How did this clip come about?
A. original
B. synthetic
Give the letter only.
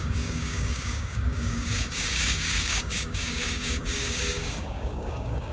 B